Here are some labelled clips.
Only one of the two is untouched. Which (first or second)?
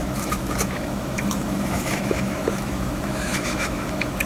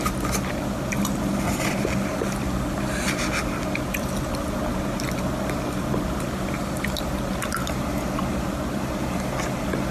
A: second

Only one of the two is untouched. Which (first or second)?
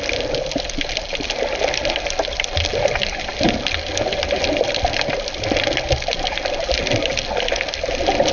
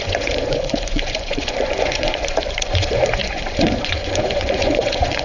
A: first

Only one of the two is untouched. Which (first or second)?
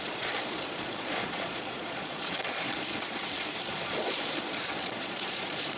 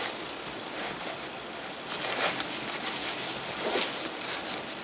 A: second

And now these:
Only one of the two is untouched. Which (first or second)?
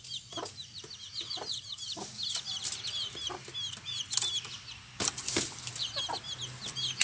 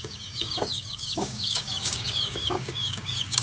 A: first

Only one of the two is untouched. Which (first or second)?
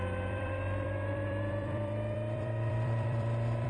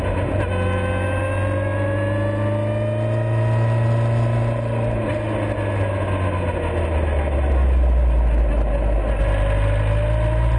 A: second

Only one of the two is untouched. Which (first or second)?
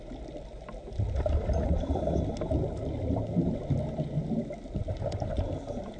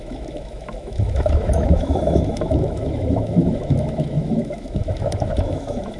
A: first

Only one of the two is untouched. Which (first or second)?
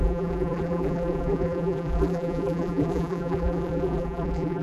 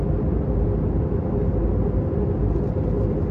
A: second